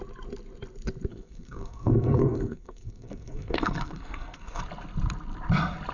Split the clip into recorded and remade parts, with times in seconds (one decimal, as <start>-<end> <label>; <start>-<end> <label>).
0.0-1.1 recorded; 1.1-4.6 remade; 4.6-5.9 recorded